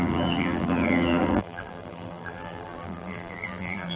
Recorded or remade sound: remade